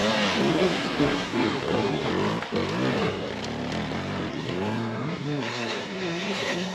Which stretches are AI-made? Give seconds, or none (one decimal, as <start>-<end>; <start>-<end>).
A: 0.5-2.1; 2.9-3.3; 4.3-6.7